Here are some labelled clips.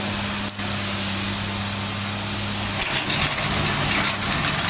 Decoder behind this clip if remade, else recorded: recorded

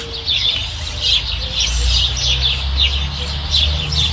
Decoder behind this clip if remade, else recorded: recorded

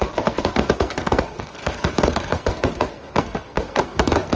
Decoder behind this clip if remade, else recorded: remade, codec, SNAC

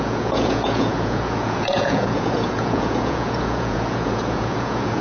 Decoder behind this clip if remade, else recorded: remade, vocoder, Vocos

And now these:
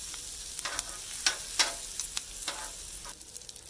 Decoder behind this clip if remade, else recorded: recorded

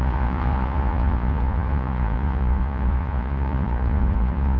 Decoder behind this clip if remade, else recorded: remade, vocoder, Vocos